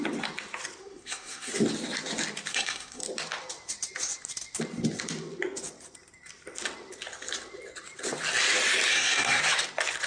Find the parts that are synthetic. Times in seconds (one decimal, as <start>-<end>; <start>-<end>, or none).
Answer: 0.8-1.5; 2.5-3.0; 8.9-9.4